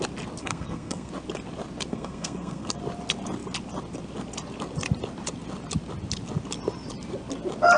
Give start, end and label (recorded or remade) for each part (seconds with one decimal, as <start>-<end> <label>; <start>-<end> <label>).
0.0-0.4 recorded; 0.4-1.1 remade; 1.1-1.9 recorded; 1.9-2.8 remade; 2.8-7.8 recorded